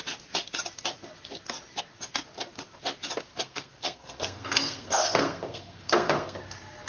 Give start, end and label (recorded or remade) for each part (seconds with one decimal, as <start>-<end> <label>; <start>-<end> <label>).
0.0-3.3 recorded; 3.3-6.4 remade; 6.4-6.9 recorded

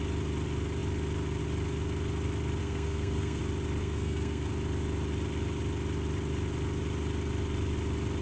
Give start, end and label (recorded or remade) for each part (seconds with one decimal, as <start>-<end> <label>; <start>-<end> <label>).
0.0-2.6 recorded; 2.6-3.4 remade; 3.4-3.8 recorded; 3.8-4.5 remade; 4.5-8.2 recorded

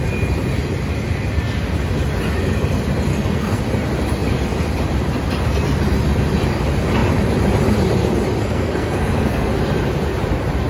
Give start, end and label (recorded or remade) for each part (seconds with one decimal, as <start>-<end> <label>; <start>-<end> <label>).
0.0-3.1 recorded; 3.1-3.6 remade; 3.6-8.4 recorded; 8.4-9.5 remade; 9.5-10.7 recorded

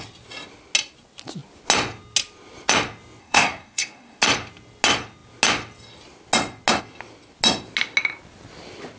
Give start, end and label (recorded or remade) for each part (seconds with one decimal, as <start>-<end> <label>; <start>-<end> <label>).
0.0-3.2 recorded; 3.2-4.2 remade; 4.2-9.0 recorded

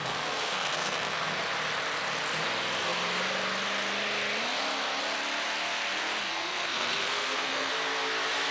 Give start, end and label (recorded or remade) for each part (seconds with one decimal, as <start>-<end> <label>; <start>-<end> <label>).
0.0-1.4 remade; 1.4-6.2 recorded; 6.2-7.7 remade; 7.7-8.5 recorded

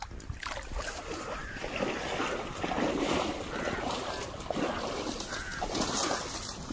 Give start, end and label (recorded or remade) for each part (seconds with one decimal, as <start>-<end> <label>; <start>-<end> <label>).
0.0-6.7 recorded

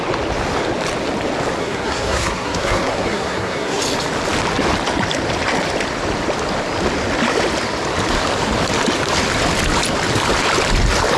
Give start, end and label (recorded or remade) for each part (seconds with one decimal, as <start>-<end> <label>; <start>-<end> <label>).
0.0-1.6 recorded; 1.6-3.8 remade; 3.8-11.2 recorded